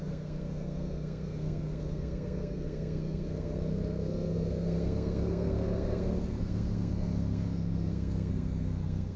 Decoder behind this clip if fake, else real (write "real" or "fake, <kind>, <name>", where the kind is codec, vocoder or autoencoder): fake, codec, SNAC